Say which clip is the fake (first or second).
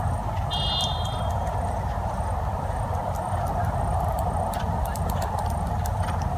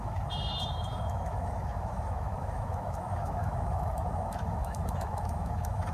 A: second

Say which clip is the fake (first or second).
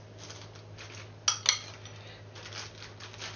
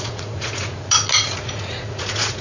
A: second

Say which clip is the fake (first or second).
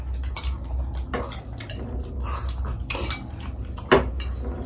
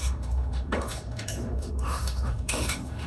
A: second